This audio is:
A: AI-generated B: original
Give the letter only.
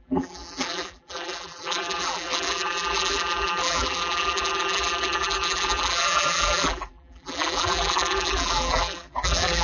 A